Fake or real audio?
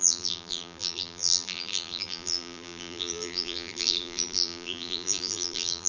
fake